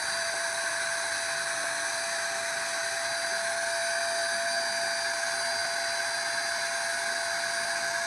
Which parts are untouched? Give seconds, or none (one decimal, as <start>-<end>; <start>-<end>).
0.0-8.1